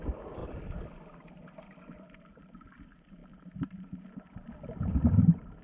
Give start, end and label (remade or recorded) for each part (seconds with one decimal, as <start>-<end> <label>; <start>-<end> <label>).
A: 0.0-5.6 remade